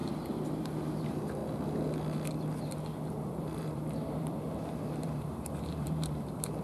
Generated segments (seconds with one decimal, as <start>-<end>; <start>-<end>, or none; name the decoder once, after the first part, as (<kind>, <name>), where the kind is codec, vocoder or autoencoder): 0.6-1.4 (vocoder, BigVGAN v2); 3.1-6.6